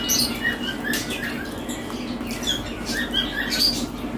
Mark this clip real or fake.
real